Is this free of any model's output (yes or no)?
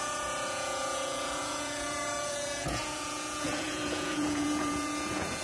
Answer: no